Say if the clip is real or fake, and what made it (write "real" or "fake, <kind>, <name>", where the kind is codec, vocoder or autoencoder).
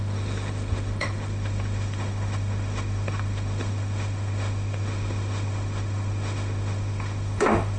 fake, autoencoder, DAC-VAE